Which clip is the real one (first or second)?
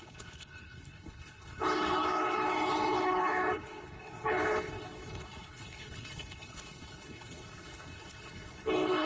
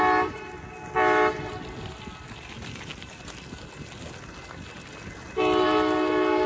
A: second